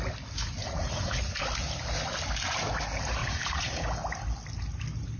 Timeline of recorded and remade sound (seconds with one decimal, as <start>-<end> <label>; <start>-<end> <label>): 0.0-0.6 recorded; 0.6-1.4 remade; 1.4-3.2 recorded; 3.2-3.8 remade; 3.8-5.2 recorded

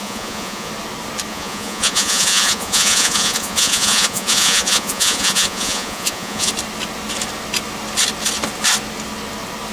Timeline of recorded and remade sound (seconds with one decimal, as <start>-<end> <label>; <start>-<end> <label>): 0.0-0.7 remade; 0.7-1.3 recorded; 1.3-6.5 remade; 6.5-9.7 recorded